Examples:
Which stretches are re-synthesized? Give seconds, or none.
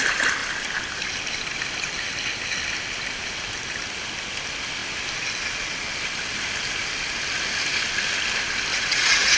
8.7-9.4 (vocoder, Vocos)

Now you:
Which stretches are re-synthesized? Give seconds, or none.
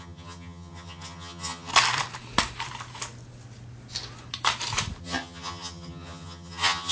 0.0-1.7 (vocoder, HiFi-GAN); 5.0-6.9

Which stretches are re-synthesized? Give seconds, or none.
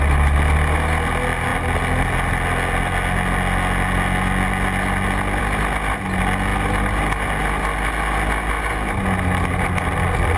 none